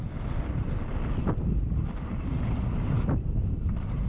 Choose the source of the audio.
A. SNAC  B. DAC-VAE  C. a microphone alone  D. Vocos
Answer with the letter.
C